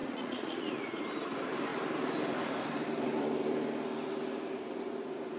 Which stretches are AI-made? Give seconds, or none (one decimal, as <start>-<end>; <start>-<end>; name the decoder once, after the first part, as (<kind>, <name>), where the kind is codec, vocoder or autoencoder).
0.0-1.0 (vocoder, Vocos)